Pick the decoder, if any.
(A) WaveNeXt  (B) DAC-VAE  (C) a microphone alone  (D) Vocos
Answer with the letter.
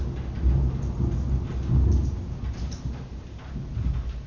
C